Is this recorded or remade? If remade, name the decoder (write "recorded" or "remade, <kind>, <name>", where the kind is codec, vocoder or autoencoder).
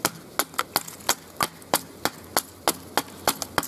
recorded